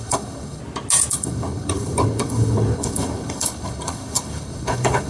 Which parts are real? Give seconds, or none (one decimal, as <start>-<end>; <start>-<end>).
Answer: 0.6-1.1